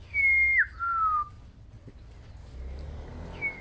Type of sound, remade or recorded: recorded